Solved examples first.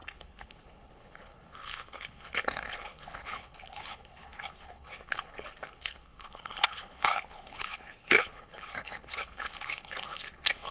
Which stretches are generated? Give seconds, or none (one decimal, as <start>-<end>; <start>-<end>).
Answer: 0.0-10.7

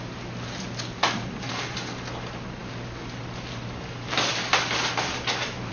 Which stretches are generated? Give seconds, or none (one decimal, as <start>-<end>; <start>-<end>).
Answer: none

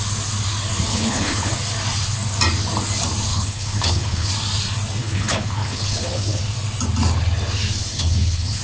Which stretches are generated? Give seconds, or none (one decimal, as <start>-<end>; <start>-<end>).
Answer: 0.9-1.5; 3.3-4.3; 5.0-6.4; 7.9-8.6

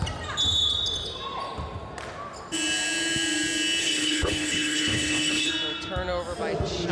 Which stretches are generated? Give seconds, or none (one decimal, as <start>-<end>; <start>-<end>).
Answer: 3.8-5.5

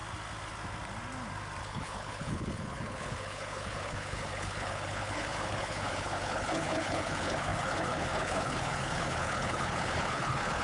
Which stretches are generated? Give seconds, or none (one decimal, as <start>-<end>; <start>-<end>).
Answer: 1.6-10.6

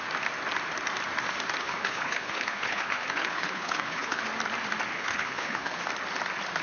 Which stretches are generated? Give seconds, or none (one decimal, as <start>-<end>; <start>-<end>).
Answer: 1.6-4.2; 4.9-5.8

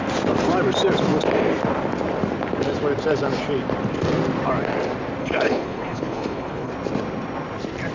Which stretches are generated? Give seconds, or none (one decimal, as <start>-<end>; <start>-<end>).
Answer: 5.2-6.7

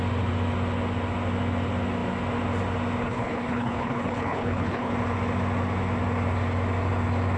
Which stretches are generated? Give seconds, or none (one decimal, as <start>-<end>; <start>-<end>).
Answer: 3.0-4.9